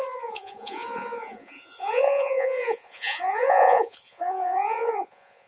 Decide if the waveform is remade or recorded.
remade